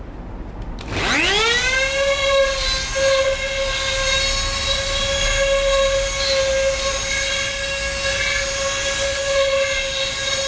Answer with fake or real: real